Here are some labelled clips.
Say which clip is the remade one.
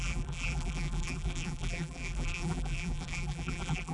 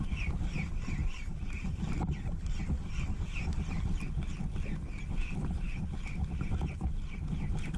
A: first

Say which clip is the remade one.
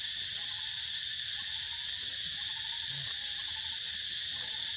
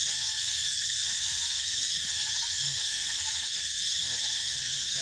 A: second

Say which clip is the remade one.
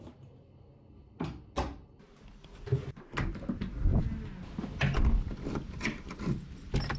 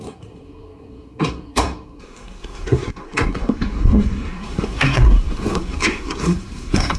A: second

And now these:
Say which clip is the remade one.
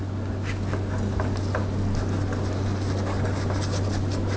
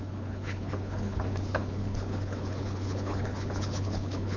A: second